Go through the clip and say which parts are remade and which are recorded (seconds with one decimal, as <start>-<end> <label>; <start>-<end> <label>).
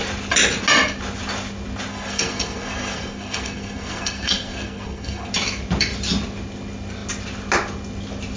0.0-1.9 recorded; 1.9-5.3 remade; 5.3-8.4 recorded